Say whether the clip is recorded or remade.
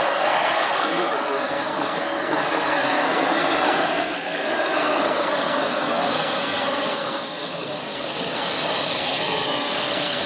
remade